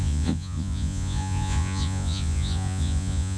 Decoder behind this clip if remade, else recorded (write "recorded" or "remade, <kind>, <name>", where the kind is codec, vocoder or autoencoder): remade, vocoder, Vocos